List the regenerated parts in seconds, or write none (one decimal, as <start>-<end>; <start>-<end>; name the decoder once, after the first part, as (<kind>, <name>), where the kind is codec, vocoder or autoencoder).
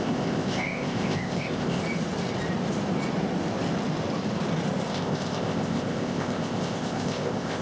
0.0-1.8 (codec, ZipCodec); 4.9-7.6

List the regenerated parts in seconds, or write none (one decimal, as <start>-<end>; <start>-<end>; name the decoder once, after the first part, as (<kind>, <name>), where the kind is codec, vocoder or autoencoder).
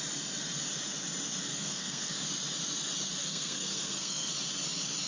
1.5-2.1 (codec, SNAC); 3.2-4.3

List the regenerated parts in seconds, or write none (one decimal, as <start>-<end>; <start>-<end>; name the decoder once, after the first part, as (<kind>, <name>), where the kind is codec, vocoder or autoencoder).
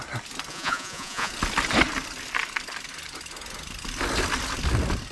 0.5-1.3 (vocoder, Vocos)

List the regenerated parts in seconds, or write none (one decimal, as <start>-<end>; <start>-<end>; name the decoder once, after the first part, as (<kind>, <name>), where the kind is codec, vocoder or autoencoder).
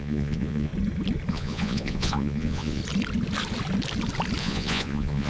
0.0-0.7 (vocoder, Vocos); 1.3-2.8; 4.4-5.3